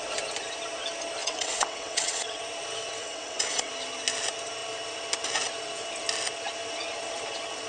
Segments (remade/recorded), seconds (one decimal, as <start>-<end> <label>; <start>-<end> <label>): 0.0-1.2 recorded; 1.2-2.4 remade; 2.4-3.0 recorded; 3.0-3.7 remade; 3.7-7.7 recorded